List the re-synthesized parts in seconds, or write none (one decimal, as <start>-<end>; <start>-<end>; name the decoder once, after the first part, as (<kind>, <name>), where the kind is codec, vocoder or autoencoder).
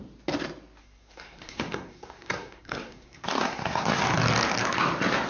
0.8-4.0 (codec, SNAC)